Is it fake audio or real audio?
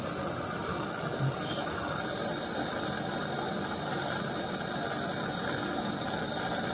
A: real